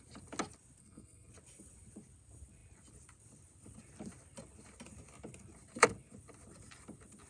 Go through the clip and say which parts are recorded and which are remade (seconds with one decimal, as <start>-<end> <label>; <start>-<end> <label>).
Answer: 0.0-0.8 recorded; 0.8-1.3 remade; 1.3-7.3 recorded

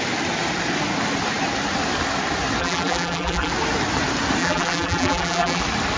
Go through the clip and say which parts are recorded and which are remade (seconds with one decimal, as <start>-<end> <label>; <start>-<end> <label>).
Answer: 0.0-2.6 recorded; 2.6-3.5 remade; 3.5-4.4 recorded; 4.4-5.6 remade; 5.6-6.0 recorded

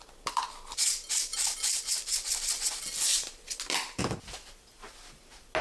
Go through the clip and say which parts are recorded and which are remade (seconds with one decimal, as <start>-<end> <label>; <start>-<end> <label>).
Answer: 0.0-1.3 recorded; 1.3-1.9 remade; 1.9-3.1 recorded; 3.1-4.0 remade; 4.0-5.6 recorded